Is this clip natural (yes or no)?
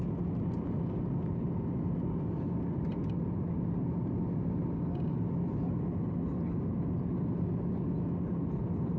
yes